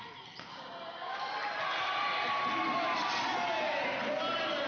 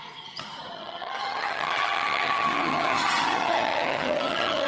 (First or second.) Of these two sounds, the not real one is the second